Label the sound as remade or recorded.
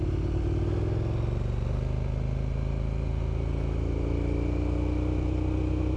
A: recorded